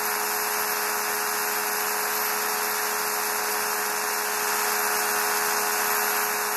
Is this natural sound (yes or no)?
yes